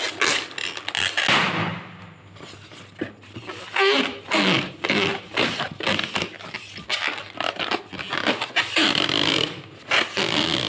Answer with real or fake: real